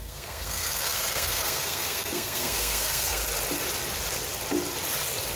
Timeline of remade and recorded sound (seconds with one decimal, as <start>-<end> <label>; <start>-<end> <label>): 0.0-3.2 remade; 3.2-5.4 recorded